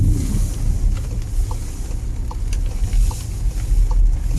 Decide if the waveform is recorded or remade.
recorded